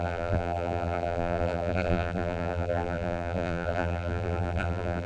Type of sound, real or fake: fake